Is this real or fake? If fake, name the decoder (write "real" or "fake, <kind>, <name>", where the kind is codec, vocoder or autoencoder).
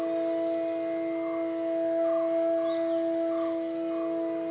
real